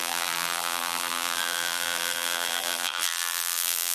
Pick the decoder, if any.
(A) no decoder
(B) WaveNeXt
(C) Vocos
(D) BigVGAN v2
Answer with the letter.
D